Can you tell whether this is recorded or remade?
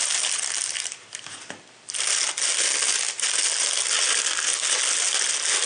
recorded